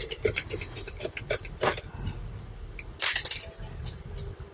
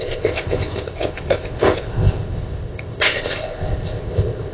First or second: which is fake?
second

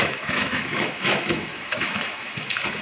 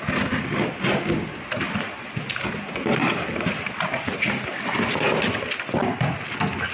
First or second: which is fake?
first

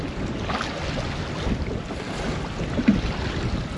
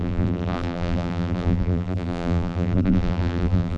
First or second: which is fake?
second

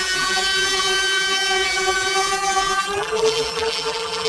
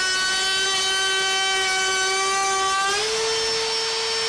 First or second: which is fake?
first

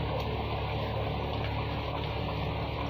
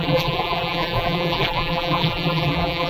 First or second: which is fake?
second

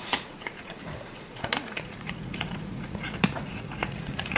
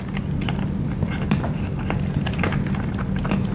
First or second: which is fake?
first